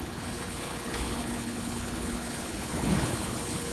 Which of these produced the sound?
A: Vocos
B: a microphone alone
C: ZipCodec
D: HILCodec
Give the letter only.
D